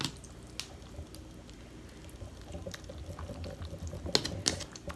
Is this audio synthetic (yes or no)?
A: no